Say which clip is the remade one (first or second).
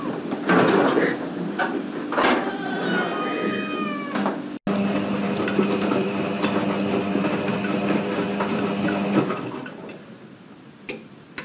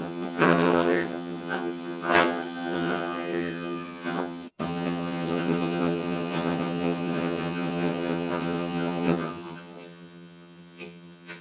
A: second